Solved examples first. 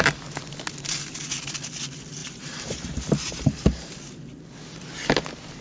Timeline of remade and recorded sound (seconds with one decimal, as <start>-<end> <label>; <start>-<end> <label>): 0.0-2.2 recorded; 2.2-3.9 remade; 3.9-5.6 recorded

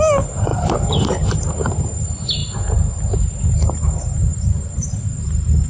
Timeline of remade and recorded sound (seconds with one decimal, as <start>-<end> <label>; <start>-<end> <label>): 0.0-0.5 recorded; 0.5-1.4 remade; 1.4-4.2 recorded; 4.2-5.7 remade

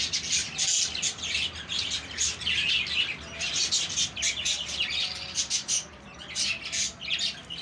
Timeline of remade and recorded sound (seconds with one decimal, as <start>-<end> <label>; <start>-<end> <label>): 0.0-5.4 recorded; 5.4-5.9 remade; 5.9-7.6 recorded